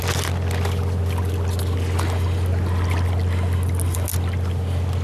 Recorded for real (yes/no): yes